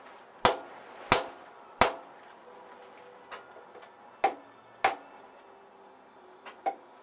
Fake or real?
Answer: real